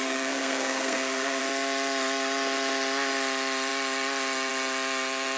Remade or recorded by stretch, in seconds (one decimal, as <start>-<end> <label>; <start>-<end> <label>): 0.0-1.4 remade; 1.4-5.4 recorded